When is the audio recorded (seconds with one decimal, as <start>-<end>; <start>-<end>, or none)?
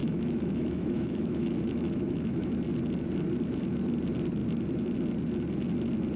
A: 2.5-6.2